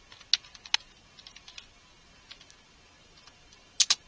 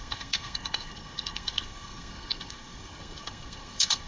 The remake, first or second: second